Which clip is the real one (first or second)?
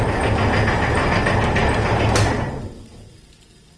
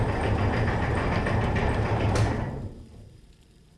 first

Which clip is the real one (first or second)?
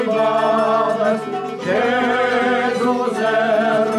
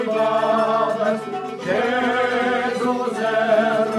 first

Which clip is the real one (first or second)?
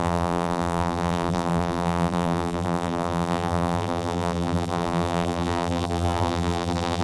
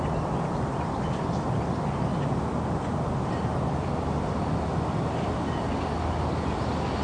second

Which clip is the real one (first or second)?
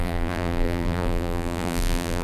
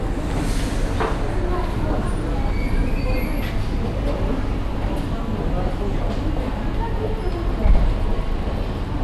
second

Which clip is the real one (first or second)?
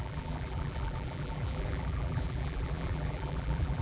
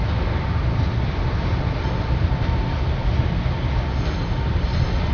second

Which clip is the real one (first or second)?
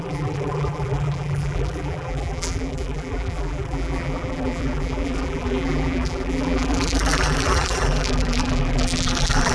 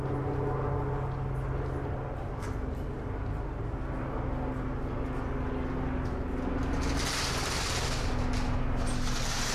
second